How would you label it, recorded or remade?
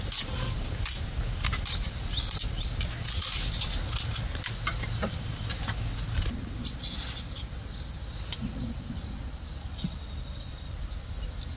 recorded